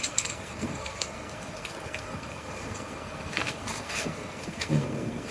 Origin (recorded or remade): remade